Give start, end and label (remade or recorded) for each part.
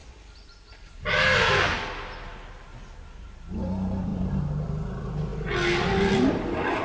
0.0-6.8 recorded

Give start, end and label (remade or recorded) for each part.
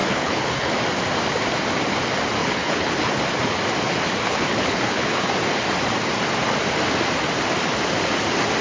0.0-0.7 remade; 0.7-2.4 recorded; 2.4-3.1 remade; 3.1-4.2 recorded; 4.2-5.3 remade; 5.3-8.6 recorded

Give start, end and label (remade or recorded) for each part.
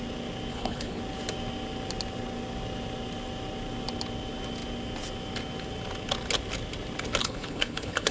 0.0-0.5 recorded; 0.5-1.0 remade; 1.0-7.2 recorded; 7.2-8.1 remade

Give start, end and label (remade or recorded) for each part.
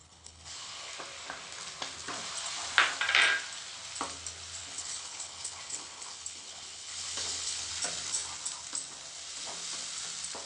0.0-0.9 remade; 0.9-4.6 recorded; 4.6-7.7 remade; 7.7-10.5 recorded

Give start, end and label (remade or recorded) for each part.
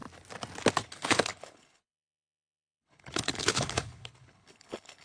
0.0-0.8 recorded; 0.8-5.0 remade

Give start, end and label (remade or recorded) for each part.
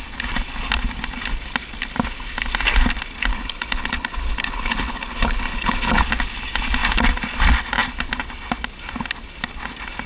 0.0-3.3 recorded; 3.3-6.0 remade; 6.0-10.1 recorded